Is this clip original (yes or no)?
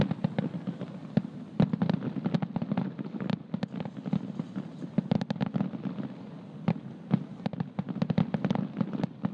yes